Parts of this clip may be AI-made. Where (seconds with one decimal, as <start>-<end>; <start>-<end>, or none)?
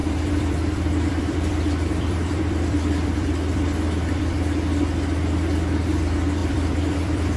0.0-4.4; 6.4-7.4